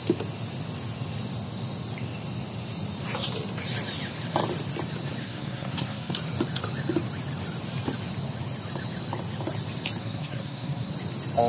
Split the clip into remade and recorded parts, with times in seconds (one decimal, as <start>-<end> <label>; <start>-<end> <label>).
0.0-5.2 recorded; 5.2-6.1 remade; 6.1-10.0 recorded; 10.0-10.9 remade; 10.9-11.5 recorded